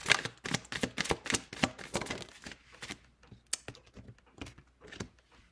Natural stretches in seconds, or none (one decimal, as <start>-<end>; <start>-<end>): 0.0-5.5